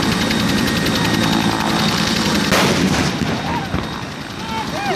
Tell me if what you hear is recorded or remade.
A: recorded